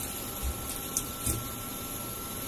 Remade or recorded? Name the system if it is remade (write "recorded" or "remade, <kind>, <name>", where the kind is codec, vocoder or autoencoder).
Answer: recorded